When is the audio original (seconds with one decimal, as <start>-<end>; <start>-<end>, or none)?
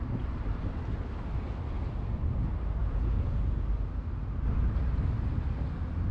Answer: 0.0-2.8; 3.4-6.1